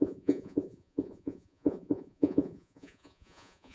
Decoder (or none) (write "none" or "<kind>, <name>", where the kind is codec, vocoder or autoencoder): vocoder, Vocos